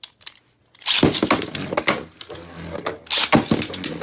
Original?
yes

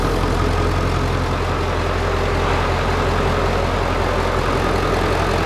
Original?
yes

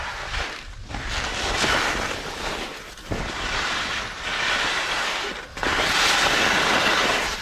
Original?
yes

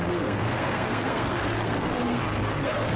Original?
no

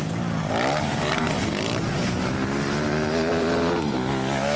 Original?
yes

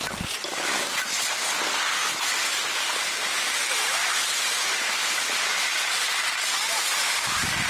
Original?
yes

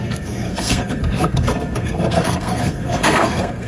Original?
no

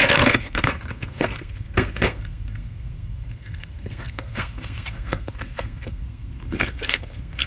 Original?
no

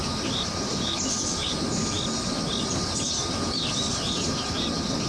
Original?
yes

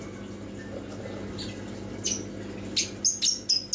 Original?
yes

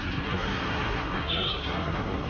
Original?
no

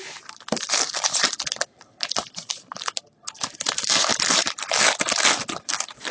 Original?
yes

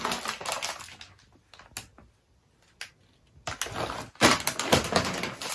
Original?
yes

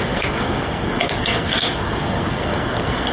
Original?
no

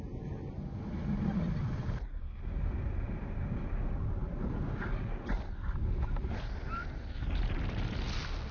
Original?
yes